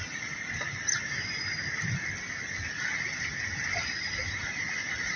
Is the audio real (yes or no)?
yes